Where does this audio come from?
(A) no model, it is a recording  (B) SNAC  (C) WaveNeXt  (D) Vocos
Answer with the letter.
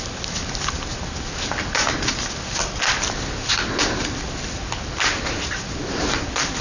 A